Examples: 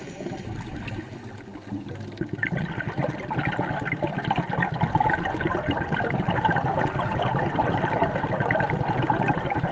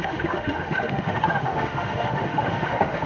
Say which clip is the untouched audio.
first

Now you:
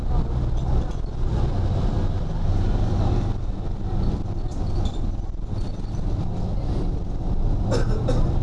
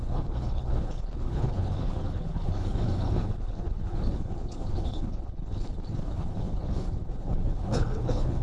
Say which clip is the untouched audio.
first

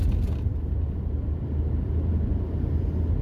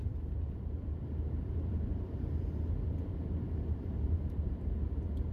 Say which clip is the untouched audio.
first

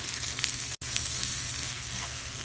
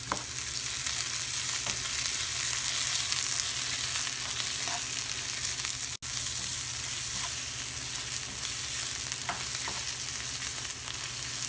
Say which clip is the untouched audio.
second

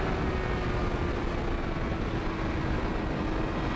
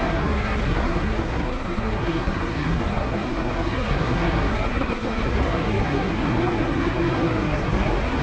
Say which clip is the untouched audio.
first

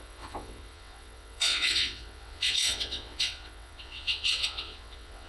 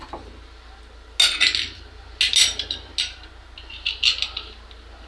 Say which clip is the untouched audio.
second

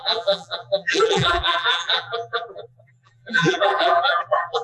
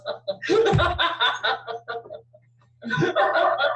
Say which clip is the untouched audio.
second